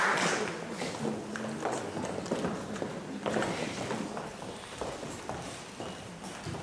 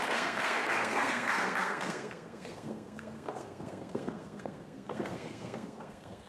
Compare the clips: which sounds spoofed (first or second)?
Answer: second